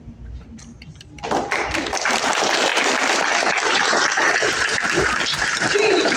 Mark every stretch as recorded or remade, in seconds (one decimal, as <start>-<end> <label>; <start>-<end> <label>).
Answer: 0.0-0.6 remade; 0.6-2.2 recorded; 2.2-6.2 remade